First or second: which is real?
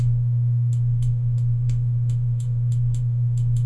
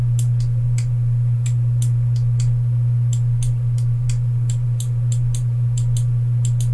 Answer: second